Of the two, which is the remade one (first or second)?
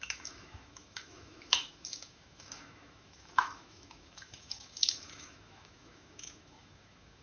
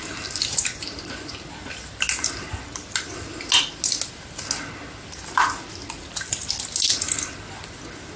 first